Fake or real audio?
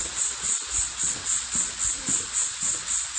real